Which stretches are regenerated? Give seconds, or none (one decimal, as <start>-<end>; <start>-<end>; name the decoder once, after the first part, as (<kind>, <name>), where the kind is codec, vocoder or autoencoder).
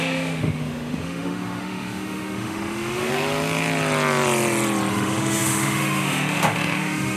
0.0-3.1 (autoencoder, DAC-VAE); 4.9-7.2